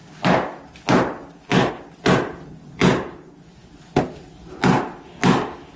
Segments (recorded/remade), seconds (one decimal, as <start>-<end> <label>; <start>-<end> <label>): 0.0-5.8 recorded